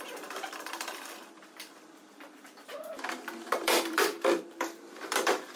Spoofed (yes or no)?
yes